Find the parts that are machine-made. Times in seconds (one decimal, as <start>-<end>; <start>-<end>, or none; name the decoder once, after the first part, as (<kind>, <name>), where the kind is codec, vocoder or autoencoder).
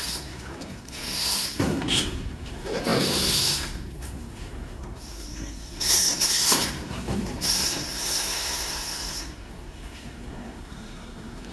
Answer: 0.0-11.5 (codec, SNAC)